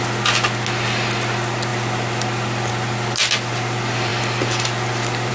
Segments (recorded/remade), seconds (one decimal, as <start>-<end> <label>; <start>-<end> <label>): 0.0-5.3 recorded

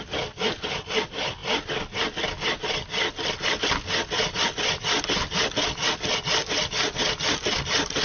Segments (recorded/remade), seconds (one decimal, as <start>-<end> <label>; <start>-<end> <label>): 0.0-8.0 recorded

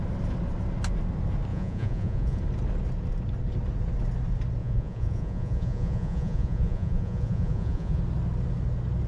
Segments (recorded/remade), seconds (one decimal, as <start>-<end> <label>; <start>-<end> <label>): 0.0-1.5 recorded; 1.5-2.4 remade; 2.4-4.6 recorded; 4.6-8.0 remade; 8.0-9.1 recorded

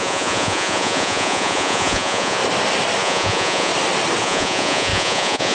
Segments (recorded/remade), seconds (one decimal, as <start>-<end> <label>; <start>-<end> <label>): 0.0-2.4 remade; 2.4-3.0 recorded; 3.0-3.7 remade; 3.7-4.2 recorded; 4.2-5.5 remade

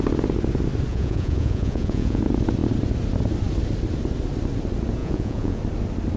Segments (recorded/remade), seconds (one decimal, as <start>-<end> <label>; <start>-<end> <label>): 0.0-0.9 recorded; 0.9-2.2 remade; 2.2-5.0 recorded; 5.0-5.6 remade; 5.6-6.2 recorded

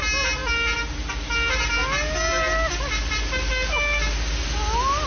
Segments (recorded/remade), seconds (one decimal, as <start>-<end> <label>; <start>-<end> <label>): 0.0-5.1 recorded

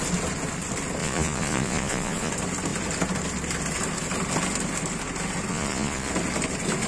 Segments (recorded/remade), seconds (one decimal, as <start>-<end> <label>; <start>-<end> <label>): 0.0-1.0 recorded; 1.0-2.3 remade; 2.3-5.5 recorded; 5.5-6.1 remade; 6.1-6.9 recorded